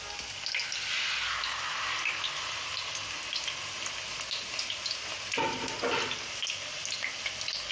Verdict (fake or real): real